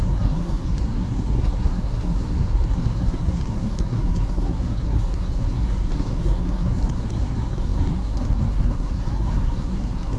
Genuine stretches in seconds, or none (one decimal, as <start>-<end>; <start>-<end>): none

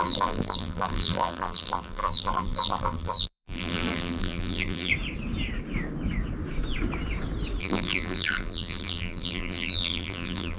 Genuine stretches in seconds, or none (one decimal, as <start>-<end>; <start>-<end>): 4.9-7.6